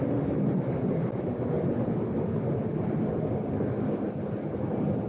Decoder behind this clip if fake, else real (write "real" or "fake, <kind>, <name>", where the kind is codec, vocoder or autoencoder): real